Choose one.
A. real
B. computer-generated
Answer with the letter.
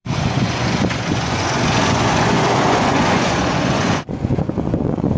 B